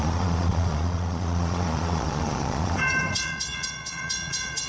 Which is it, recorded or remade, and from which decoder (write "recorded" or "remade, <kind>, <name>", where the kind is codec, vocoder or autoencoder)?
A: remade, vocoder, Vocos